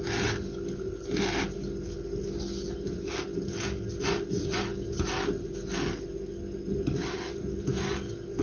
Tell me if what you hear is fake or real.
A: real